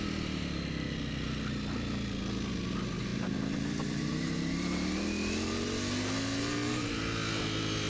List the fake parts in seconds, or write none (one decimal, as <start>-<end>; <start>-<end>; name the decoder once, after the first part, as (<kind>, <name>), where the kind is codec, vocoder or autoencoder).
none

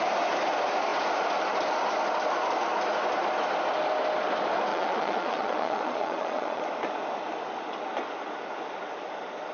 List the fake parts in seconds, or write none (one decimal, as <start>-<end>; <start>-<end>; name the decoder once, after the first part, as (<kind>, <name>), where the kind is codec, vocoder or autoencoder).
4.7-6.7 (vocoder, Vocos)

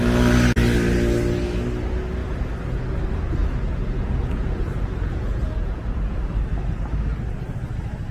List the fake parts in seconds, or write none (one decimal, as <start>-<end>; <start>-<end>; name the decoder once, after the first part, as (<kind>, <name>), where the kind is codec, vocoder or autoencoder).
3.4-6.2 (vocoder, Vocos)

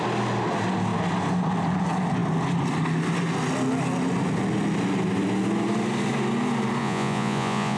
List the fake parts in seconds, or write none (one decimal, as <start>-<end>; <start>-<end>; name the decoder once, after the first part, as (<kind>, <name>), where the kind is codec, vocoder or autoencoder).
6.8-7.8 (vocoder, Vocos)

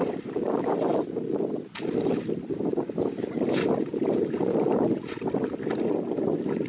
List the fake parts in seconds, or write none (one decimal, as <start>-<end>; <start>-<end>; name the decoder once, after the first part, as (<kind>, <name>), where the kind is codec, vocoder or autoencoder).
none

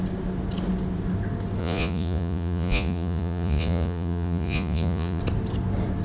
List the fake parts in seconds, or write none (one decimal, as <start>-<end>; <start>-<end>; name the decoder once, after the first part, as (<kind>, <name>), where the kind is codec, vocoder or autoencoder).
1.6-5.2 (vocoder, Vocos)

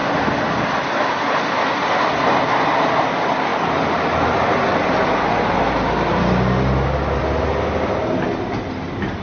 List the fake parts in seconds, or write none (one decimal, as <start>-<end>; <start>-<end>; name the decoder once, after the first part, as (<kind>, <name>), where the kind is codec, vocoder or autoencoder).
none